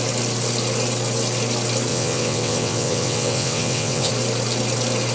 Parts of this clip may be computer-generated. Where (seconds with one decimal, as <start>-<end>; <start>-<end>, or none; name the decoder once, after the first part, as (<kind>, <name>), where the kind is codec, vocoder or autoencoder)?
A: 1.9-4.1 (vocoder, WaveNeXt)